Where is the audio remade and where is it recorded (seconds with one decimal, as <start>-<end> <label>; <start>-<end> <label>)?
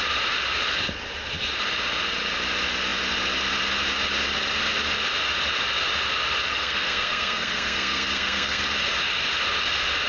0.0-6.5 recorded; 6.5-8.6 remade; 8.6-10.1 recorded